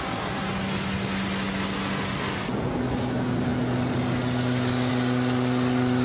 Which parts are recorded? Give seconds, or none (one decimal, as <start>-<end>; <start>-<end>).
0.0-6.0